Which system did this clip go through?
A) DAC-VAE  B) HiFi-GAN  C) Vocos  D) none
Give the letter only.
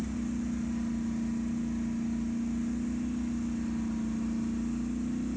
D